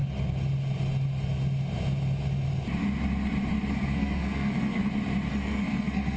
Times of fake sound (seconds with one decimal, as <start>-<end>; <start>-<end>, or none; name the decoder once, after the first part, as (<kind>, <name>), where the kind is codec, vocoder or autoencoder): 3.7-4.8 (codec, SNAC); 5.3-6.2